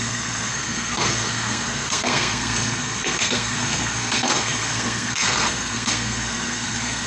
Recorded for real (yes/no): no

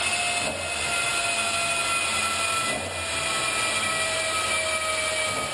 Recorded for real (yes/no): yes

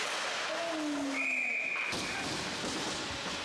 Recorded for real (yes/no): yes